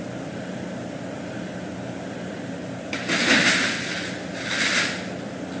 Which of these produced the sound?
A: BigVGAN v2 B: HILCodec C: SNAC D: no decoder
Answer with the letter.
D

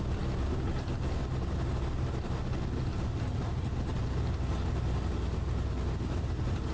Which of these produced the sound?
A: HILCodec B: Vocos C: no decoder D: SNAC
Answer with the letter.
C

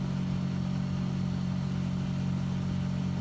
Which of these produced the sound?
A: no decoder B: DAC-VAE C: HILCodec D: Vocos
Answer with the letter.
A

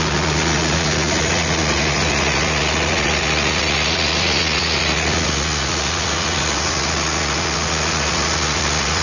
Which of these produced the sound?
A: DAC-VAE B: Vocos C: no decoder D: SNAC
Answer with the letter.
B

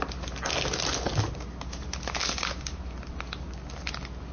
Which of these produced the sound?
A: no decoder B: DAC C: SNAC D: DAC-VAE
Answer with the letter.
A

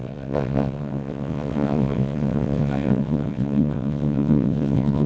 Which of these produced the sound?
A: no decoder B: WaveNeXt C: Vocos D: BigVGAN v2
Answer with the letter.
B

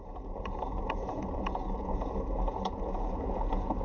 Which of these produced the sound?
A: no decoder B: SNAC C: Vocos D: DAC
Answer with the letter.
C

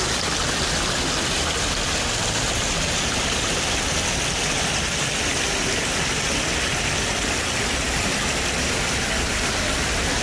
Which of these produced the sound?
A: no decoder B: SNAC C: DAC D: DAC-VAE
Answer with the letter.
A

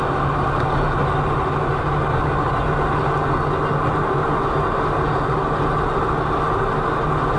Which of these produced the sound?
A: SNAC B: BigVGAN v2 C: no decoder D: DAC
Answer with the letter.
C